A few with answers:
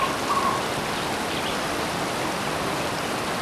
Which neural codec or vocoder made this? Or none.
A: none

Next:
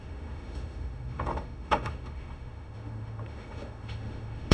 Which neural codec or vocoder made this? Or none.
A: autoencoder, DAC-VAE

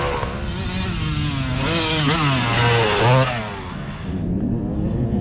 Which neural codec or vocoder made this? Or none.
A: none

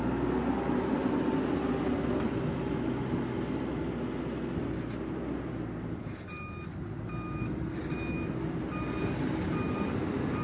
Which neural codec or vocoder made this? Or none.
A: none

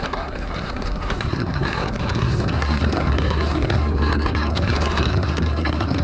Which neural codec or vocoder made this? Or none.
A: codec, SNAC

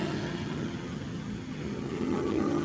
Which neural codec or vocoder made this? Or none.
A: vocoder, HiFi-GAN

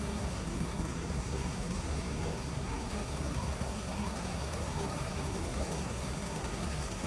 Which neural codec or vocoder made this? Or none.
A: codec, SNAC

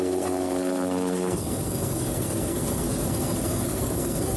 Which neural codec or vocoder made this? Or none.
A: codec, SNAC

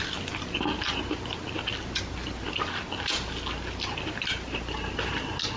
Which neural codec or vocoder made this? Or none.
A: none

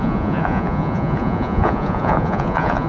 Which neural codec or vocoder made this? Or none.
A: vocoder, Vocos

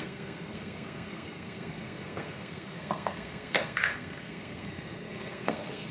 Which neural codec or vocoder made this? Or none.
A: codec, SNAC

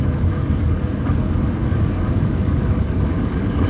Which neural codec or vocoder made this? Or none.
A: codec, DAC